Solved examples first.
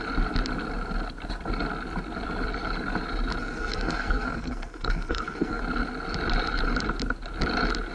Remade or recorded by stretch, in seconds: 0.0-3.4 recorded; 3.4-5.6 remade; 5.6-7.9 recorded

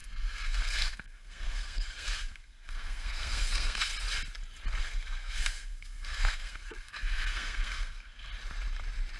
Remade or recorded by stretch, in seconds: 0.0-3.9 remade; 3.9-4.8 recorded; 4.8-8.3 remade; 8.3-9.2 recorded

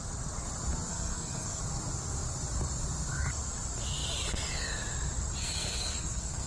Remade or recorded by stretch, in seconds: 0.0-0.9 recorded; 0.9-1.6 remade; 1.6-5.4 recorded; 5.4-6.5 remade

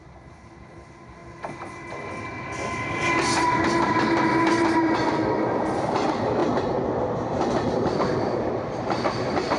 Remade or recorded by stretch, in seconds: 0.0-9.6 recorded

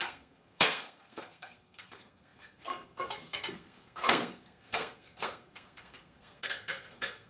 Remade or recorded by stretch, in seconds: 0.0-7.3 remade